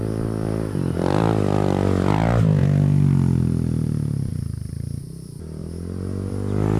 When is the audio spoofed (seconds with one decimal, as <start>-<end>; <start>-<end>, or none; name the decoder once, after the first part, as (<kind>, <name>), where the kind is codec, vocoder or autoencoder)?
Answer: 0.0-5.6 (vocoder, BigVGAN v2); 6.3-6.8